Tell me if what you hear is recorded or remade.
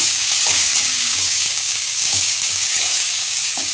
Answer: remade